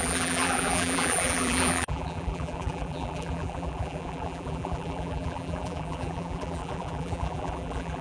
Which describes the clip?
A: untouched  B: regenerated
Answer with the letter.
B